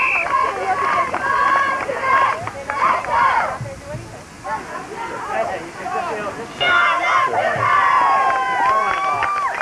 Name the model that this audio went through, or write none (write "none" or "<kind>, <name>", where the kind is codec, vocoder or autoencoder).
none